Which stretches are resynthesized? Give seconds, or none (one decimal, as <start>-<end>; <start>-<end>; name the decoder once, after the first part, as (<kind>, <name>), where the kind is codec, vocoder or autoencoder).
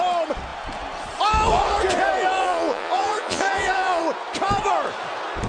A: 2.4-4.0 (vocoder, Vocos)